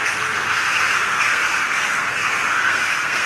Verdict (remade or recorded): remade